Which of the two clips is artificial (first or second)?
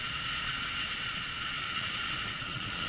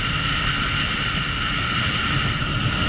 first